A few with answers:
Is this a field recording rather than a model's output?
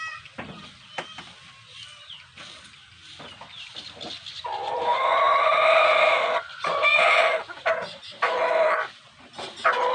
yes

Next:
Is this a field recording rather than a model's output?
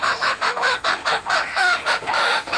no